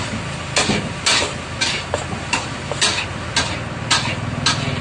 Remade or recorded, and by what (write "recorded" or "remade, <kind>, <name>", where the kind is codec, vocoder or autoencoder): recorded